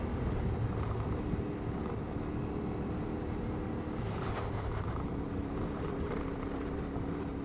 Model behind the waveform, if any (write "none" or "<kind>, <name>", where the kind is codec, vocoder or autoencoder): none